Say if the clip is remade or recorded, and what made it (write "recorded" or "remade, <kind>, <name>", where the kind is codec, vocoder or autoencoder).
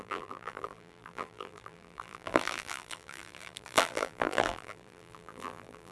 remade, vocoder, BigVGAN v2